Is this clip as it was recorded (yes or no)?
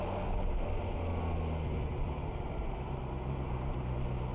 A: yes